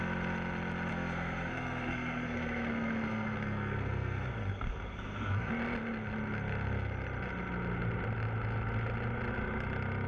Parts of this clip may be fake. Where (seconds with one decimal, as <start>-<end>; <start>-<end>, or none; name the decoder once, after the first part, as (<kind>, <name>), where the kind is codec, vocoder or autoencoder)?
0.9-5.5 (codec, SNAC)